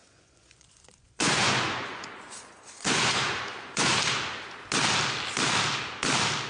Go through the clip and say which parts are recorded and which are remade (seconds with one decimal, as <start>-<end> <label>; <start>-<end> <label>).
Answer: 0.0-3.9 remade; 3.9-6.5 recorded